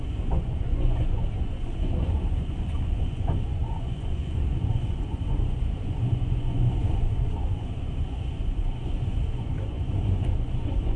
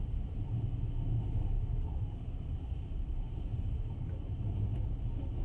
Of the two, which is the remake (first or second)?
first